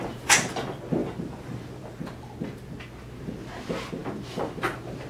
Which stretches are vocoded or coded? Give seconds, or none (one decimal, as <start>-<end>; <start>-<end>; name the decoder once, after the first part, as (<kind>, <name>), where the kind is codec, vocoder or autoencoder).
1.0-2.0 (vocoder, BigVGAN v2)